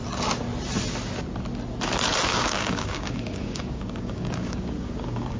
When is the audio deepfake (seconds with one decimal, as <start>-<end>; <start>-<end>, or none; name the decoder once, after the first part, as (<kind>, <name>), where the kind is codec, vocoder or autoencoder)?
2.3-5.4 (codec, DAC)